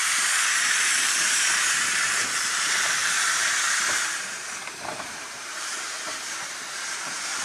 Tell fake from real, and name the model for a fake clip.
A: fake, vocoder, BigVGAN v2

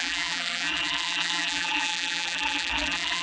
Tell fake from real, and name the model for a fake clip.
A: fake, vocoder, BigVGAN v2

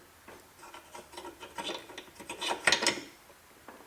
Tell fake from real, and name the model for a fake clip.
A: real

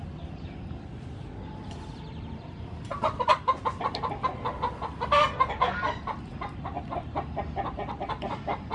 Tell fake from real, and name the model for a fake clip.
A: real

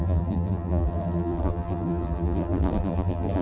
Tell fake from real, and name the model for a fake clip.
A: fake, vocoder, BigVGAN v2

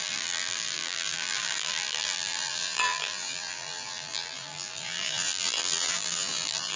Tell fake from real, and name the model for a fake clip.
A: fake, vocoder, BigVGAN v2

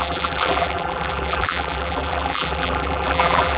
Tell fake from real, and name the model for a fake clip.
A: fake, vocoder, BigVGAN v2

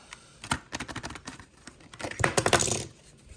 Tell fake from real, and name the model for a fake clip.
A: fake, vocoder, BigVGAN v2